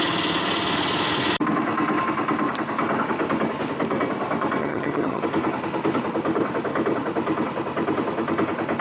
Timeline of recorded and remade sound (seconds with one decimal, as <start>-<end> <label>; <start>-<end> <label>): 0.0-4.6 recorded; 4.6-5.2 remade; 5.2-8.8 recorded